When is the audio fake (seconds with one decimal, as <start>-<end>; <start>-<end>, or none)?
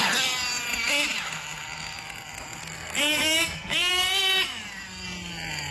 2.6-3.9